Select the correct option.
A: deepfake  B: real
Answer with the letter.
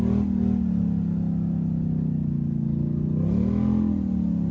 B